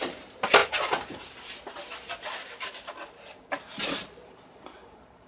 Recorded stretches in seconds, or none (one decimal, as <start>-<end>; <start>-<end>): 0.6-3.8